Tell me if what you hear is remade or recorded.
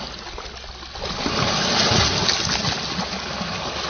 recorded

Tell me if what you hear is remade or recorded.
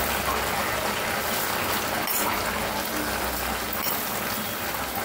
recorded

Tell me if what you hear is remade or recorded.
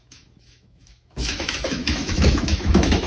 remade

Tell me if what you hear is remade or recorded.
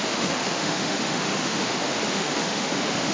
remade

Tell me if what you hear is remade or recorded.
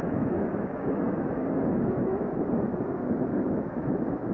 remade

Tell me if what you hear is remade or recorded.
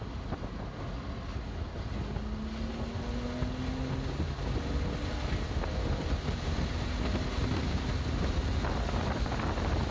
recorded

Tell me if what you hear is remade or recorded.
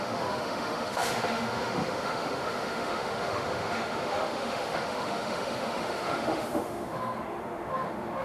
remade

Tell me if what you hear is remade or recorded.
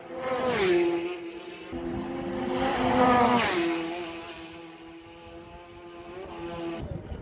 recorded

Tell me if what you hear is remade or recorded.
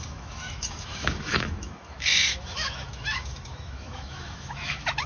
remade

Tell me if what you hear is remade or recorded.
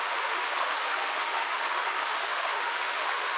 remade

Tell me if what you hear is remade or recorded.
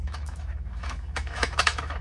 remade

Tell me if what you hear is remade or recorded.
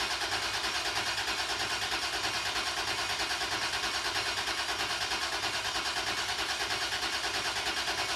recorded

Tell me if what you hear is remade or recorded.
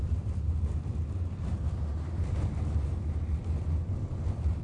recorded